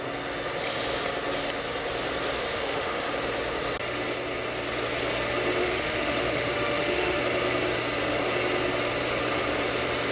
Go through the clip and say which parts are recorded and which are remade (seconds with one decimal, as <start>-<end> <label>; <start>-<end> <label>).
0.0-2.4 recorded; 2.4-3.1 remade; 3.1-5.6 recorded; 5.6-7.2 remade; 7.2-10.1 recorded